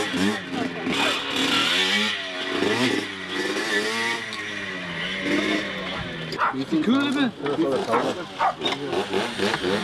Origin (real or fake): real